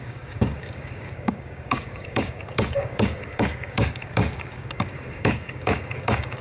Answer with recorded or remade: remade